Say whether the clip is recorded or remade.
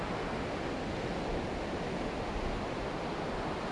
recorded